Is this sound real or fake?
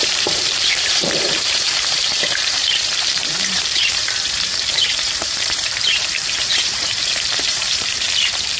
fake